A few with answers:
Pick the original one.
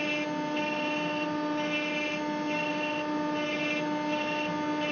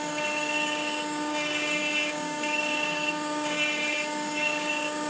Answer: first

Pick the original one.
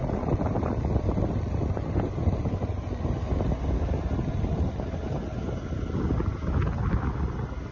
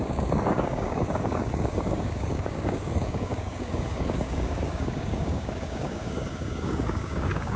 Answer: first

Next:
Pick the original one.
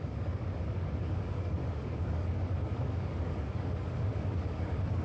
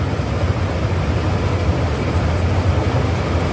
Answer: second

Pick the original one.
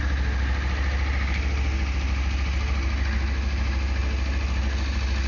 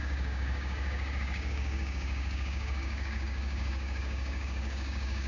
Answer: first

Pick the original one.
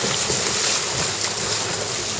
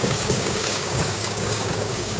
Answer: first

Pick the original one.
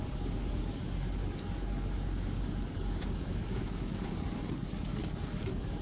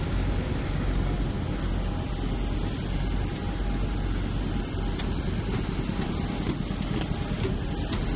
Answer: second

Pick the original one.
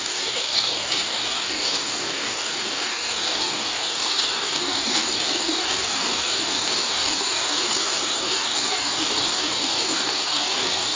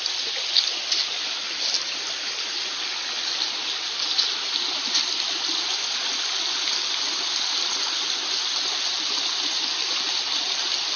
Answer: second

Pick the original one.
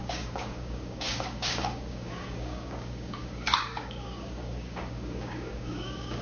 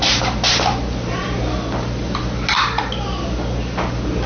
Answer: second